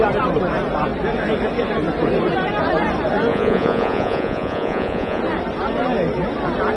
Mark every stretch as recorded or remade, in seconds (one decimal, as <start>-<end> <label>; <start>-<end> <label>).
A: 0.0-3.3 recorded; 3.3-5.2 remade; 5.2-6.8 recorded